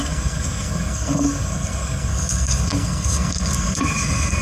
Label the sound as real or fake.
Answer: fake